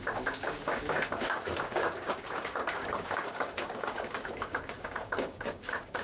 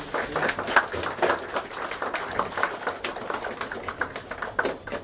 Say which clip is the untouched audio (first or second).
second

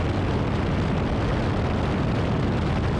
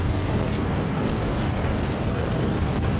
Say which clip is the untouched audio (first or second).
first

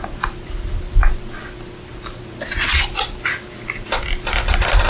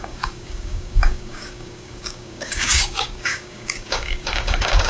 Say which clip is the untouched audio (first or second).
first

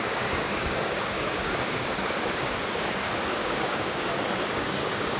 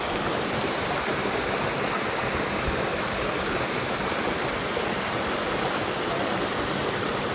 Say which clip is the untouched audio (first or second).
second